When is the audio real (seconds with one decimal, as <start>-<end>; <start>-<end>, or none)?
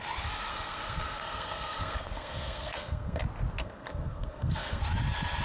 0.0-0.5; 3.2-3.6; 4.8-5.4